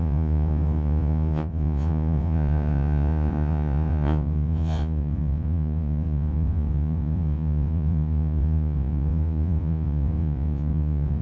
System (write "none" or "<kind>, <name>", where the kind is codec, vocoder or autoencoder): vocoder, Vocos